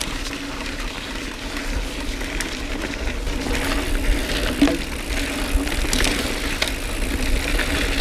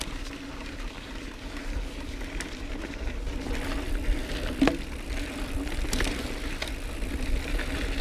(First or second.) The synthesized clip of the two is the second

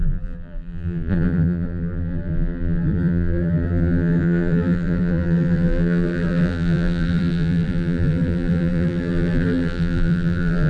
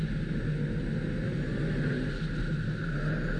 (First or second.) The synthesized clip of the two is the first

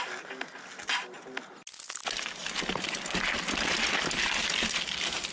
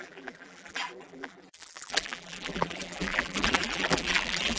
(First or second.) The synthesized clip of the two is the second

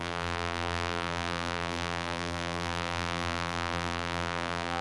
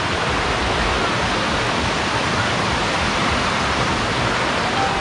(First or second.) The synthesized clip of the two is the first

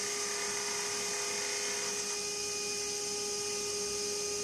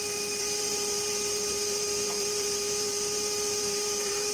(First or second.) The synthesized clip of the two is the second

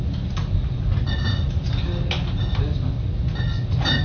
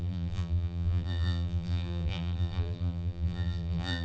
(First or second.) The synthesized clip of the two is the second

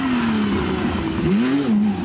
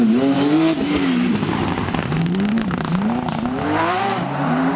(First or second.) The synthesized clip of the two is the second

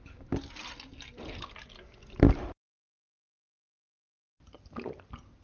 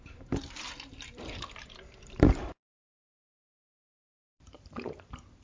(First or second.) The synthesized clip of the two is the second